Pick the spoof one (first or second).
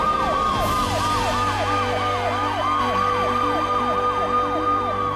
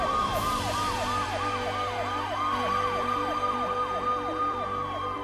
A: second